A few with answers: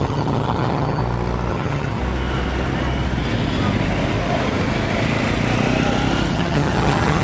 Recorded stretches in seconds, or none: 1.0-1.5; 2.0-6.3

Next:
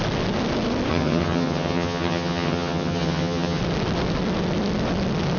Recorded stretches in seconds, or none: 0.0-0.9; 3.6-5.4

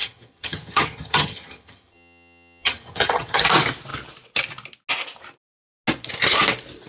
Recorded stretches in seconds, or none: 3.4-6.9

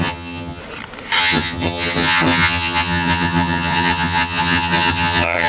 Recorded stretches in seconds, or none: 0.6-1.2